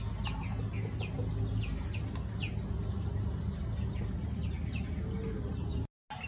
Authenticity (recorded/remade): recorded